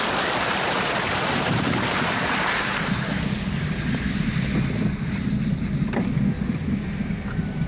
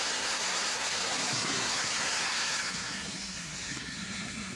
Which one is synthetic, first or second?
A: second